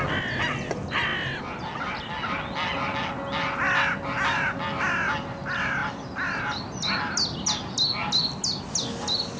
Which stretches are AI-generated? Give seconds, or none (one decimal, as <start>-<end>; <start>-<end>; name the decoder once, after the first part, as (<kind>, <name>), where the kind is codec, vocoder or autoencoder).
none